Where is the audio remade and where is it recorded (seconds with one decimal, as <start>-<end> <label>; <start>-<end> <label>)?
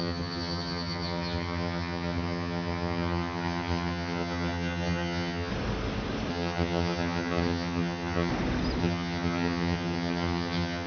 0.0-5.5 remade; 5.5-6.3 recorded; 6.3-8.3 remade; 8.3-8.8 recorded; 8.8-10.9 remade